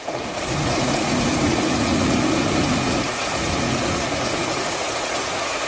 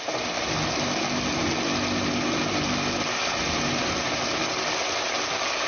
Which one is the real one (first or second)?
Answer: second